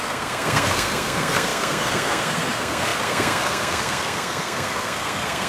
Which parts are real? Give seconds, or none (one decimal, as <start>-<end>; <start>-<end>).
none